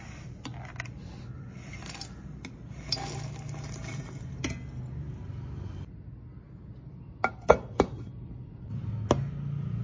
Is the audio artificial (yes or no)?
no